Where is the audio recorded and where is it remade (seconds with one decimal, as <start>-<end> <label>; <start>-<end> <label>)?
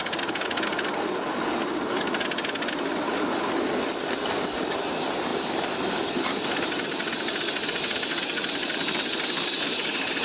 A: 0.0-10.2 recorded